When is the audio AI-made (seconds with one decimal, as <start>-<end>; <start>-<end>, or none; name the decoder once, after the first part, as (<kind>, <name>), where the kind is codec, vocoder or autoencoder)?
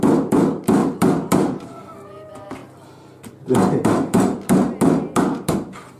none